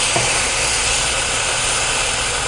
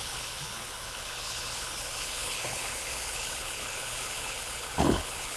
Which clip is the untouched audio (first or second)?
first